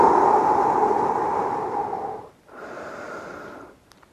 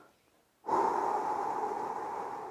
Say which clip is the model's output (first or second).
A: first